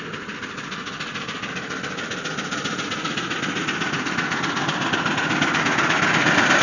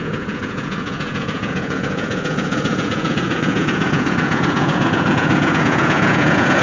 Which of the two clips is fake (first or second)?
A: second